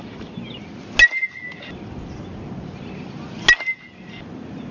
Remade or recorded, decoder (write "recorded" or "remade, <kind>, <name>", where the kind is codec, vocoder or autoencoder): recorded